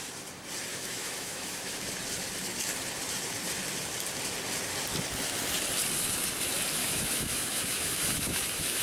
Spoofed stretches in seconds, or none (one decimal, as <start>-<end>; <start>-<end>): 0.7-1.8; 6.8-8.8